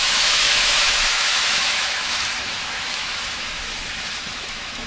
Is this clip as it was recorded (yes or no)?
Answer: no